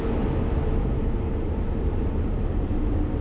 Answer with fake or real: fake